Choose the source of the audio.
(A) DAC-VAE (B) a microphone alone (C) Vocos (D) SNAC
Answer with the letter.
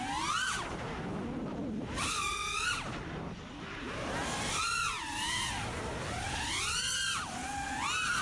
B